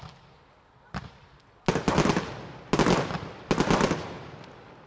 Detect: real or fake real